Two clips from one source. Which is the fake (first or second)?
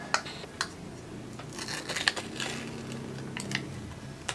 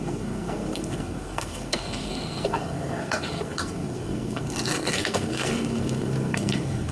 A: second